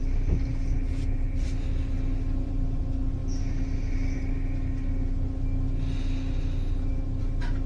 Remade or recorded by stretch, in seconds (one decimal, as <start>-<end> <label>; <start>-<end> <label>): 0.0-7.7 recorded